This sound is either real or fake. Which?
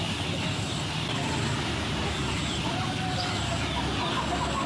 real